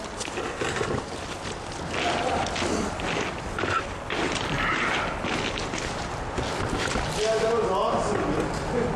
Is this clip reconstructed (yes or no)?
no